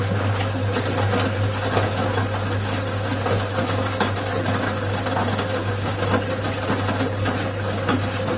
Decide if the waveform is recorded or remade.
recorded